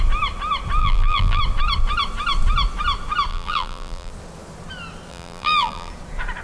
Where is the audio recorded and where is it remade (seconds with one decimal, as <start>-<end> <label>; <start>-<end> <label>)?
0.0-0.8 recorded; 0.8-1.4 remade; 1.4-3.3 recorded; 3.3-4.1 remade; 4.1-5.1 recorded; 5.1-5.9 remade; 5.9-6.4 recorded